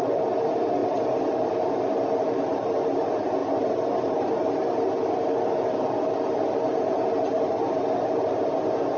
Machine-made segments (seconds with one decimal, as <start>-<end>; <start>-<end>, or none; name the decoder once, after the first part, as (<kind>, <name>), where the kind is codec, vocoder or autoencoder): none